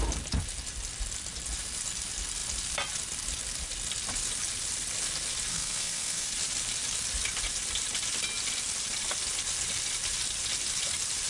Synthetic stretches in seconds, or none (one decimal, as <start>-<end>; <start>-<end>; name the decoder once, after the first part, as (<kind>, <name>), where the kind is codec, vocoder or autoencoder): 5.5-6.3 (codec, SNAC)